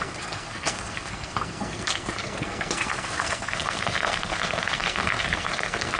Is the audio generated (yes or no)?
yes